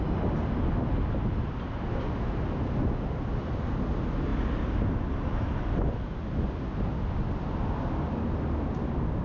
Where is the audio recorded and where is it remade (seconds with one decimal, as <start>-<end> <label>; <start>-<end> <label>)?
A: 0.0-9.2 recorded